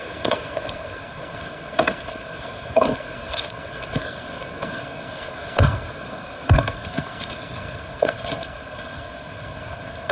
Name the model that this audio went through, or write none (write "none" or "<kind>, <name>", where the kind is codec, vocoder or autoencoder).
codec, SNAC